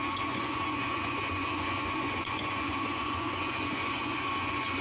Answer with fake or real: fake